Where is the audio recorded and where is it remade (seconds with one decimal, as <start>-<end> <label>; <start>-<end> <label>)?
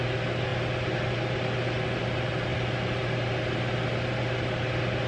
0.0-5.1 recorded